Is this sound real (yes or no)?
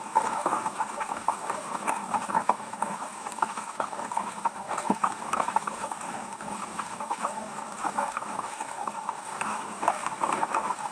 no